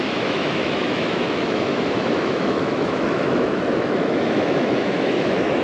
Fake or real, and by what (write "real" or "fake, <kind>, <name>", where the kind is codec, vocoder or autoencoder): fake, autoencoder, DAC-VAE